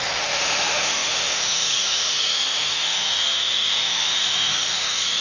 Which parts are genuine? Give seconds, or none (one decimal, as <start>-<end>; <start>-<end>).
none